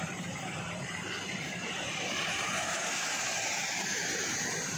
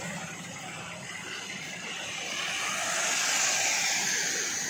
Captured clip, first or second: second